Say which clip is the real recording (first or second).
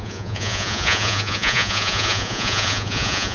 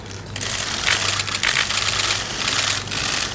second